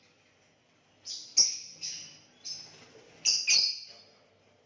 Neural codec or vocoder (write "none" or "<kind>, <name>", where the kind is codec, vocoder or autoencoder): none